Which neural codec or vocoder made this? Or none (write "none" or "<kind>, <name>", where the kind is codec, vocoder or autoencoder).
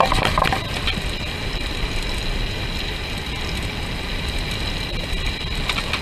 none